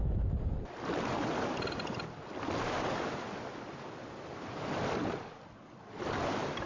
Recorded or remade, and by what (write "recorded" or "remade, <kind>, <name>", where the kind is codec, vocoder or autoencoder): recorded